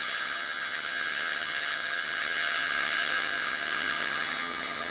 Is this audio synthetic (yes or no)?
yes